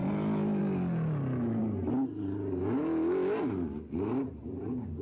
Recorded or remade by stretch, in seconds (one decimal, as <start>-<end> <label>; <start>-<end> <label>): 0.0-5.0 recorded